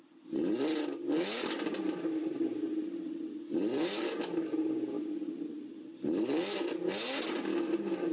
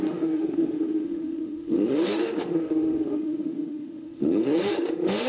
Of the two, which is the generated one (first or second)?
second